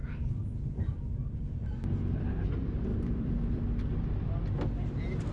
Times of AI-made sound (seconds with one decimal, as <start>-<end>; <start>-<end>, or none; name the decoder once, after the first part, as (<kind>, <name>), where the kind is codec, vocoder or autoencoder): 0.0-2.5 (vocoder, BigVGAN v2); 2.9-3.6